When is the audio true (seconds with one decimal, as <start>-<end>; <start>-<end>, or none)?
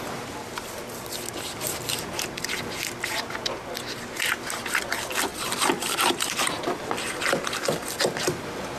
0.0-5.3; 5.9-8.8